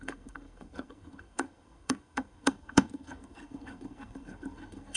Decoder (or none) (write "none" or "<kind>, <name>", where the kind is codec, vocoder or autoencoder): codec, SNAC